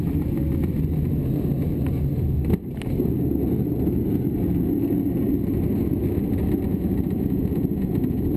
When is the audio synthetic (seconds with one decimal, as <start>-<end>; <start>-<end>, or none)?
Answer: 6.7-8.4